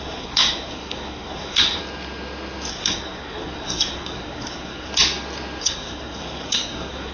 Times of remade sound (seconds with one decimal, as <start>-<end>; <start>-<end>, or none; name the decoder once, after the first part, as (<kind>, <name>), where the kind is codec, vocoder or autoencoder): 0.0-1.8 (codec, SNAC); 2.7-4.9; 5.6-7.1